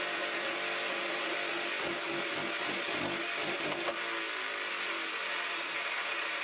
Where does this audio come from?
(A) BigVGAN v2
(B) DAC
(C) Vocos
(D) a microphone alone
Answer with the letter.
D